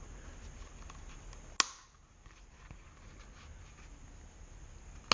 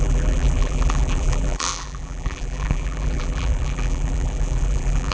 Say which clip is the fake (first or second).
second